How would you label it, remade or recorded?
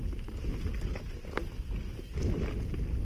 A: recorded